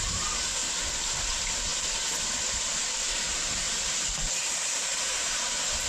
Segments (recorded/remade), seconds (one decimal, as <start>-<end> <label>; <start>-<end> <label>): 0.0-5.9 recorded